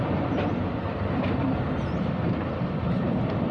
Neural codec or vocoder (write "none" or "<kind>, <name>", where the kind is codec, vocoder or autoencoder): vocoder, BigVGAN v2